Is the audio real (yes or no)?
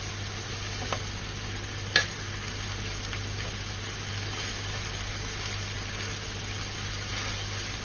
yes